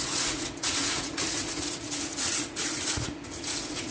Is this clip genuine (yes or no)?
no